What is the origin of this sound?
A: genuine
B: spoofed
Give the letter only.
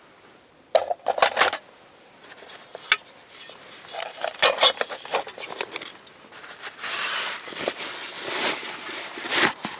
A